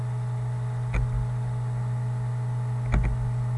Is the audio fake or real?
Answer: real